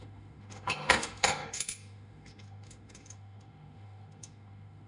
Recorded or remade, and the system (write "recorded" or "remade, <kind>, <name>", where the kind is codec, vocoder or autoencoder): remade, autoencoder, DAC-VAE